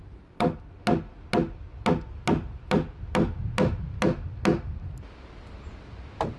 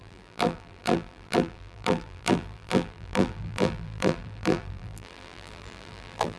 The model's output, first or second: second